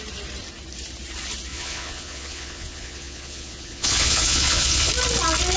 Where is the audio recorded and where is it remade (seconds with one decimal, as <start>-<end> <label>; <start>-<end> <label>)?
0.0-1.5 recorded; 1.5-4.9 remade; 4.9-5.6 recorded